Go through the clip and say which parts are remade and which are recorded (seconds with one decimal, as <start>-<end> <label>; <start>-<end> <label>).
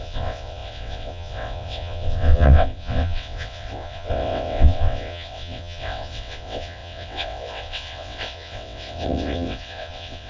0.0-10.3 remade